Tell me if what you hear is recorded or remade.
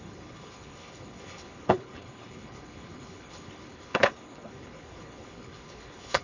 remade